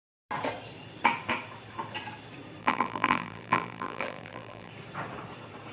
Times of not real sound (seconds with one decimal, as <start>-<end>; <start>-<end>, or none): 2.6-4.7